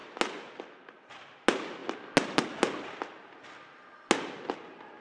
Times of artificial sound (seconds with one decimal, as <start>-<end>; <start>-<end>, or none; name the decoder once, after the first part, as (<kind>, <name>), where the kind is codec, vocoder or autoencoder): none